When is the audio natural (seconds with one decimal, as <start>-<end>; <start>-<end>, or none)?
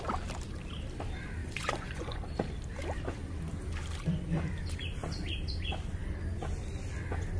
0.0-1.4; 2.2-7.4